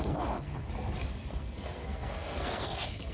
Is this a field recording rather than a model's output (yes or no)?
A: no